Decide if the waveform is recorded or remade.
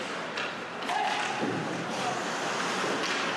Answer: recorded